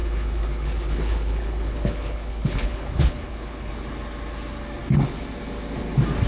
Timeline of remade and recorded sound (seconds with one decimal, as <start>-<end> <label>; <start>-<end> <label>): 0.0-3.7 remade; 3.7-6.3 recorded